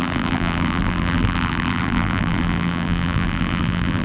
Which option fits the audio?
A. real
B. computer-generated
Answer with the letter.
B